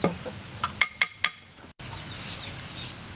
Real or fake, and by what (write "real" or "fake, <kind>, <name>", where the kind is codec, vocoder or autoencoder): real